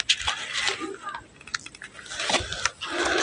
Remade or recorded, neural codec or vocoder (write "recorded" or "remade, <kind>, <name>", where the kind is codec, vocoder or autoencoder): recorded